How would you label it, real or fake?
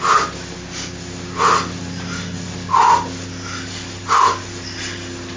real